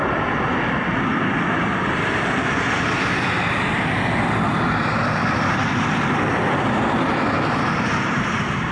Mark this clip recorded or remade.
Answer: remade